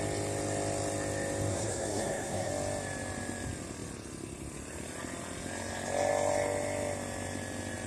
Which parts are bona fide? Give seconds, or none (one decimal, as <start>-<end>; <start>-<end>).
0.0-1.5; 2.5-7.9